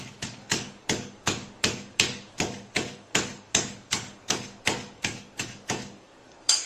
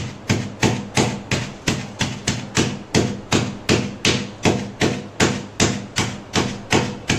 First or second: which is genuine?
second